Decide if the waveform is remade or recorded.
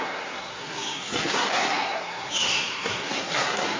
remade